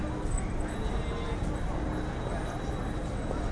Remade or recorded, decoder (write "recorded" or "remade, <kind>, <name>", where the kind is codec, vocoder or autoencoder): recorded